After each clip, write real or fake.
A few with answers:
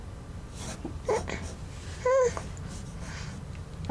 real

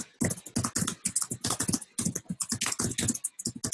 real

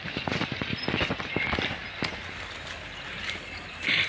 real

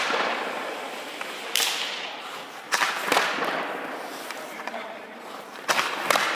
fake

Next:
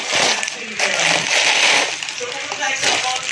real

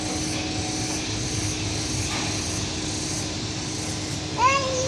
real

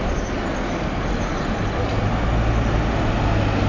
real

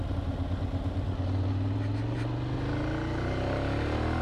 real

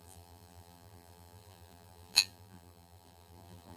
fake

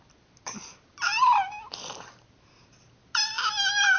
real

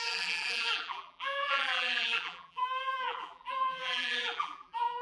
fake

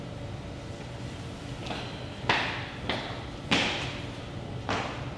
real